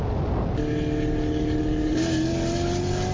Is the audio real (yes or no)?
yes